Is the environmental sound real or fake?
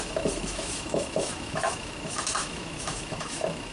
fake